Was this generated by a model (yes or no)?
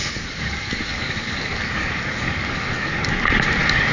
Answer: yes